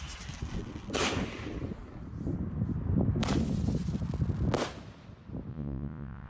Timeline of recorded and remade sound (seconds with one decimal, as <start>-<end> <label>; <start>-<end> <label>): 0.0-5.5 recorded; 5.5-6.3 remade